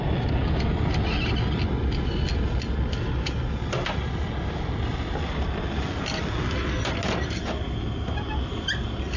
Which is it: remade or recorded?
recorded